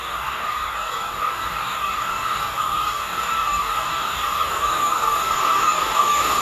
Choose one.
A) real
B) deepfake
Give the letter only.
B